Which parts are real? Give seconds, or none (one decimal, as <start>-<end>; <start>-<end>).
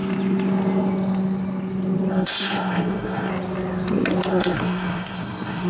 0.0-2.1; 3.3-4.3